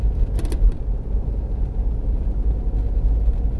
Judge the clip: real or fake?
real